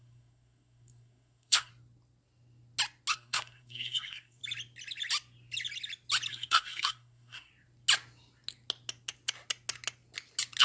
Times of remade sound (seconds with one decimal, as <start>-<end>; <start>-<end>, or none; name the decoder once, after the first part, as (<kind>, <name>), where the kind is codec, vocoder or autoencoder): 0.0-1.7 (codec, SNAC); 3.1-4.4; 6.3-7.5